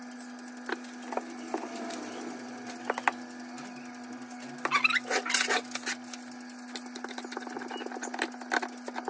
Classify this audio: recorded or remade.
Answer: recorded